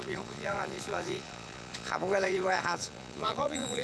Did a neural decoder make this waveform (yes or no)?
yes